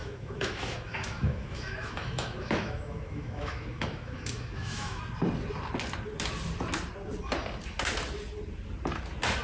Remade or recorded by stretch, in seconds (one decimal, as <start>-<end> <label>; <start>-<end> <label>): 0.0-5.0 remade; 5.0-9.4 recorded